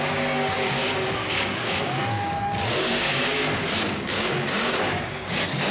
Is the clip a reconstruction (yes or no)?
yes